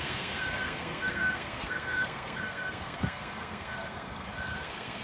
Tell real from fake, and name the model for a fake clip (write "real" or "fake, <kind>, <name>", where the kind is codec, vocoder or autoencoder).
fake, codec, SNAC